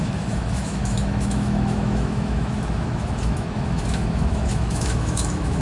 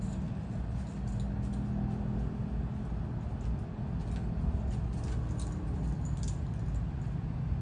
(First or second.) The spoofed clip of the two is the first